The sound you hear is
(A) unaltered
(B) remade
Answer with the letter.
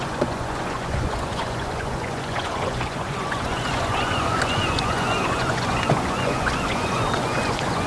B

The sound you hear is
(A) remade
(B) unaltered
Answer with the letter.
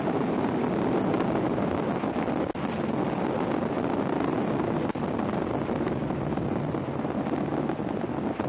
B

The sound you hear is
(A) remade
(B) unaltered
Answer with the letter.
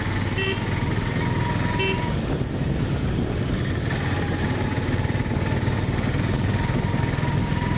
B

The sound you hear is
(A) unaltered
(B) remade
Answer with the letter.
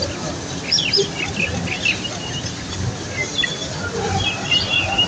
A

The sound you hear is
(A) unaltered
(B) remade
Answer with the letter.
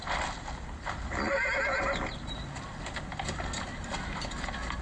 A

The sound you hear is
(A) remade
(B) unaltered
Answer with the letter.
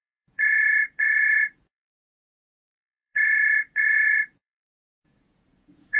A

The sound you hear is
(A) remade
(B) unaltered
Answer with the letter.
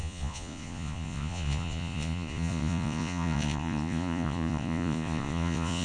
A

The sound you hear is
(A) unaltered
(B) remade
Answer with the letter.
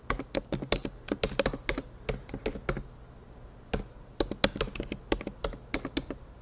A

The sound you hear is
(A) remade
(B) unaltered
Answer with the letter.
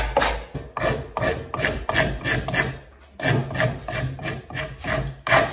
B